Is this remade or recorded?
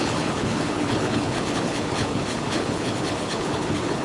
remade